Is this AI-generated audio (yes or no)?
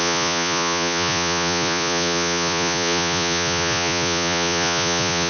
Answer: yes